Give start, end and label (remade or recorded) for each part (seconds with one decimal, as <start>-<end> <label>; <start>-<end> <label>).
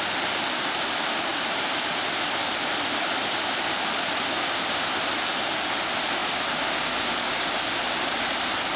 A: 0.0-1.3 recorded; 1.3-5.5 remade; 5.5-8.8 recorded